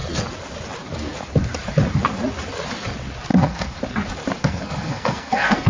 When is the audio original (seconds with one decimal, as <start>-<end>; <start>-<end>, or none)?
0.0-3.3; 3.8-4.4